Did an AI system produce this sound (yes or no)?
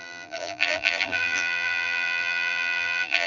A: yes